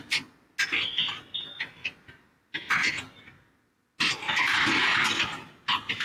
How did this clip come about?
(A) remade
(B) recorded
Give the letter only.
B